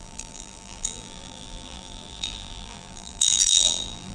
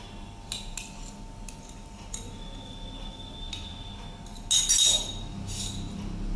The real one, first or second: second